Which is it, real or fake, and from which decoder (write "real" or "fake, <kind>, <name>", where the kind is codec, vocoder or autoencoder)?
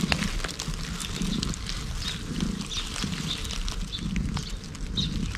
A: real